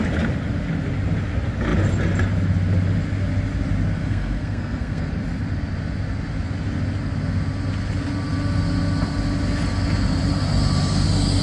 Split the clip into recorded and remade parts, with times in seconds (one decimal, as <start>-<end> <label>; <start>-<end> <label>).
0.0-4.0 recorded; 4.0-5.1 remade; 5.1-11.4 recorded